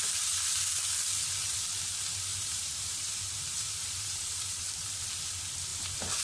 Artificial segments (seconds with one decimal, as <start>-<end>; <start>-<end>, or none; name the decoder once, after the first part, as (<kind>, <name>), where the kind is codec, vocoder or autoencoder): 2.3-5.0 (vocoder, BigVGAN v2)